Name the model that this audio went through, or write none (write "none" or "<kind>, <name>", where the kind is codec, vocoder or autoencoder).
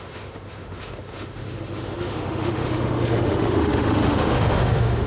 autoencoder, DAC-VAE